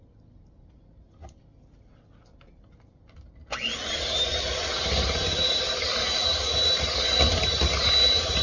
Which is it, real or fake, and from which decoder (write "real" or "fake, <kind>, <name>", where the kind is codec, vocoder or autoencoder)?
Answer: real